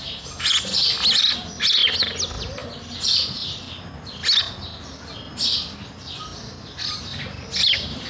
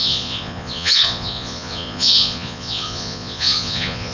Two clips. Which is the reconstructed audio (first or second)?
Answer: second